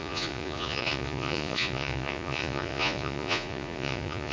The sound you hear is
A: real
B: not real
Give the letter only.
B